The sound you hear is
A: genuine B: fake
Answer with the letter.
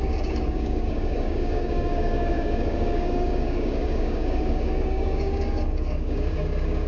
B